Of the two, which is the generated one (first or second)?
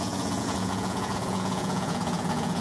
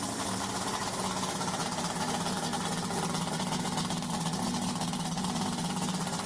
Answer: first